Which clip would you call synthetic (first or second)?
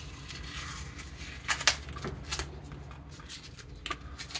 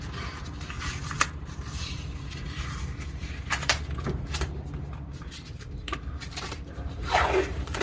second